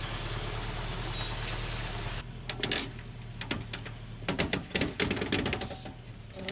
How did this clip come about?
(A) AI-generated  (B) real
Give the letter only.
B